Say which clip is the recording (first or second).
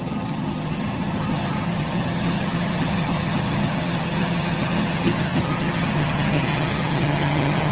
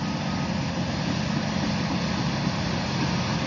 second